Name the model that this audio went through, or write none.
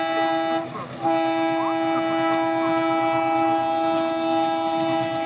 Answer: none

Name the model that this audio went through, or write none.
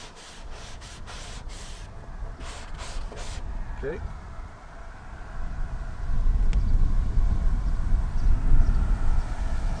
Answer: none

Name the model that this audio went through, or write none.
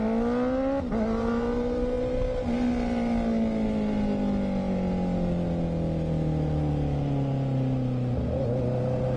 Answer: none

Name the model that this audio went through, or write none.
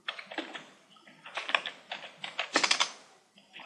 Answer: none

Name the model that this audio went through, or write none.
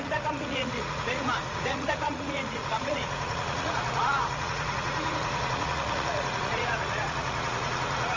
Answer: vocoder, Vocos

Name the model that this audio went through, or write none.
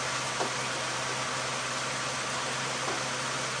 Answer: none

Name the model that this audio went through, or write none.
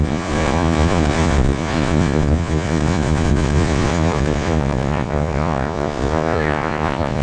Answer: vocoder, Vocos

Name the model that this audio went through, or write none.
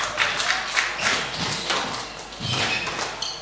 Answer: none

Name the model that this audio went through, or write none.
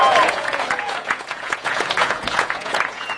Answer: vocoder, Vocos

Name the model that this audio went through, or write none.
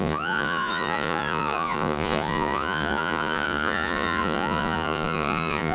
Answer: vocoder, Vocos